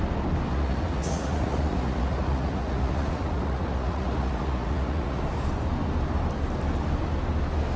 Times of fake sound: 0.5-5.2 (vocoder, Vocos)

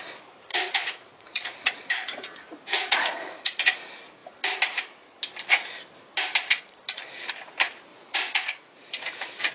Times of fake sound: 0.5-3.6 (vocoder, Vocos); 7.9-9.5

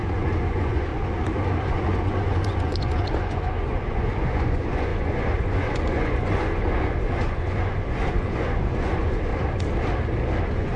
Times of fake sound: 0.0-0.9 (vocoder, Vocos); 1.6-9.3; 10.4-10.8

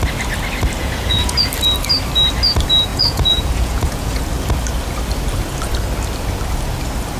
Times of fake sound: 0.8-1.5 (vocoder, Vocos); 2.9-4.2

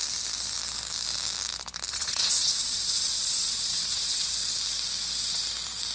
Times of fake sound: 1.9-4.3 (vocoder, Vocos)